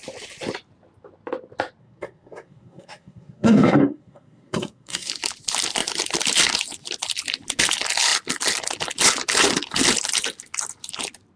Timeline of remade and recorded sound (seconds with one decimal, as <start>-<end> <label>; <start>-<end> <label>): 0.0-1.8 recorded; 1.8-5.1 remade; 5.1-11.4 recorded

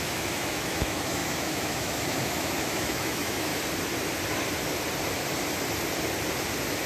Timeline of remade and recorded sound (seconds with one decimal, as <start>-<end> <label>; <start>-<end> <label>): 0.0-3.5 remade; 3.5-6.9 recorded

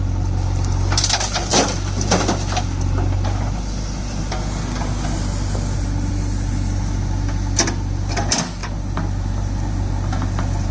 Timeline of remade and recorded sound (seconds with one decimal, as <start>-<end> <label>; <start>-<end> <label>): 0.0-10.7 recorded

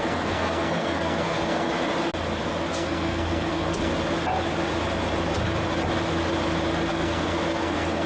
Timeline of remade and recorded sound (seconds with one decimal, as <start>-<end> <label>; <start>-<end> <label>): 0.0-1.7 remade; 1.7-2.7 recorded; 2.7-3.9 remade; 3.9-6.9 recorded; 6.9-8.1 remade

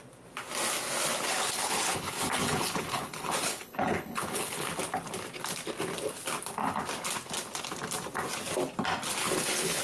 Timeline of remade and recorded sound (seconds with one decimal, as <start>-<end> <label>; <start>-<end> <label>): 0.0-1.3 recorded; 1.3-4.7 remade; 4.7-9.2 recorded; 9.2-9.8 remade

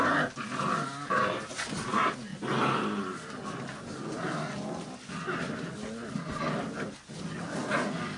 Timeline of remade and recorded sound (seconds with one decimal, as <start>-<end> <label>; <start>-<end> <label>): 0.0-8.2 recorded

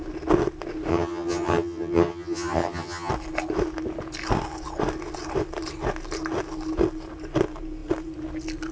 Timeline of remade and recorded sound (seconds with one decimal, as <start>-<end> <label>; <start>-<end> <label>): 0.0-0.9 recorded; 0.9-3.1 remade; 3.1-8.7 recorded